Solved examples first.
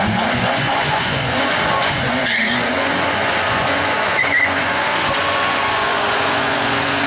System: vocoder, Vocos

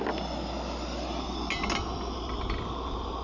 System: none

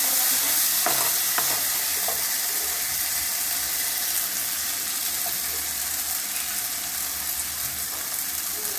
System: none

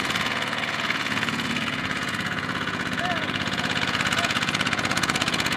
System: vocoder, Vocos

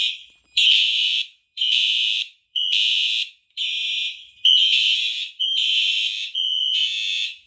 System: vocoder, BigVGAN v2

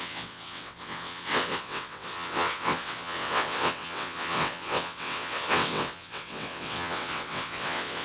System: vocoder, WaveNeXt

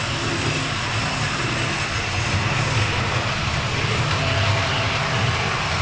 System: none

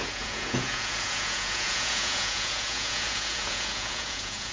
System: vocoder, Vocos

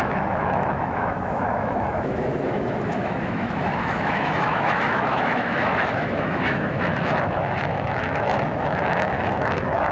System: autoencoder, DAC-VAE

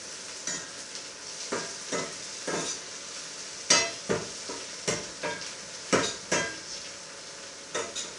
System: none